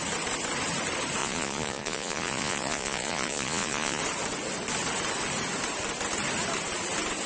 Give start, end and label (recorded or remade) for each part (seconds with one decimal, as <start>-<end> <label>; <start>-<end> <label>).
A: 0.0-1.2 recorded; 1.2-4.0 remade; 4.0-7.3 recorded